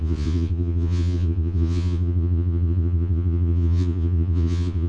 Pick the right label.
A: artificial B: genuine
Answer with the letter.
A